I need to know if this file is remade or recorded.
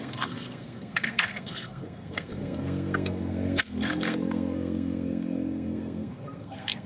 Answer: remade